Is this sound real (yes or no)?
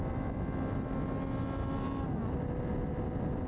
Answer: yes